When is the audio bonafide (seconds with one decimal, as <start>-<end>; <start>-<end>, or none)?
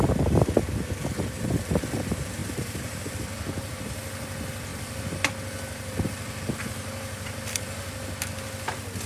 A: 0.0-2.4; 3.1-9.1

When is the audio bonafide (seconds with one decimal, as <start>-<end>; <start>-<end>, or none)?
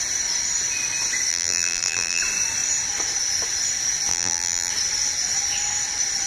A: 0.0-1.3; 2.2-4.1; 4.7-6.3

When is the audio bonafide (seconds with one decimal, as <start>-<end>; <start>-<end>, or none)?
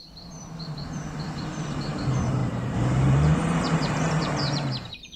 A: none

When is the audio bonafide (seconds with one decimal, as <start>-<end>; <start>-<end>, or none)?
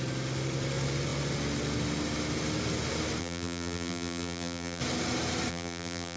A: 0.0-3.2; 4.8-5.5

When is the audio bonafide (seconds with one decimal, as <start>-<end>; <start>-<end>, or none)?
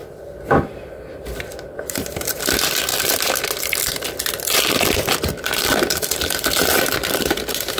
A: 2.9-4.0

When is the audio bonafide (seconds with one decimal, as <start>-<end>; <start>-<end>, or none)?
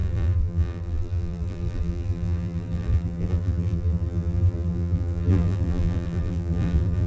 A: none